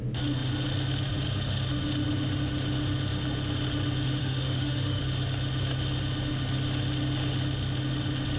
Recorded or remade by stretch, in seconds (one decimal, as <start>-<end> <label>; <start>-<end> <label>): 0.0-4.2 recorded; 4.2-5.0 remade; 5.0-8.4 recorded